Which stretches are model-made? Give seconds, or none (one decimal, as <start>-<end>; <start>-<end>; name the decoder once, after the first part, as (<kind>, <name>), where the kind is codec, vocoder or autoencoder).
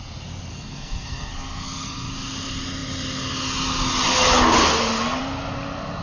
0.5-2.1 (codec, SNAC)